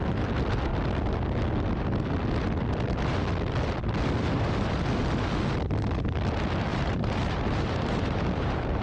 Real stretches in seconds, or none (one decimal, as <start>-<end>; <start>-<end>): 0.0-6.7

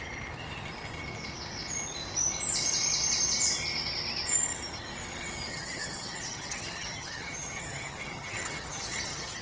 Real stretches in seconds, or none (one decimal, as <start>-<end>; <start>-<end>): 0.0-5.5